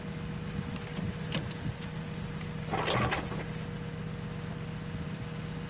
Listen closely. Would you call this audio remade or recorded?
recorded